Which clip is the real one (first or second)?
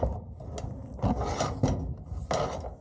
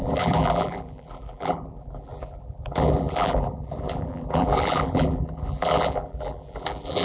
first